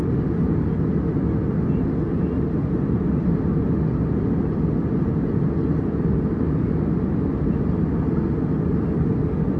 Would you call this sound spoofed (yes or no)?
no